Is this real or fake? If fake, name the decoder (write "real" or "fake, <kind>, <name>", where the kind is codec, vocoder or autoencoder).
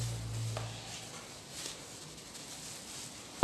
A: real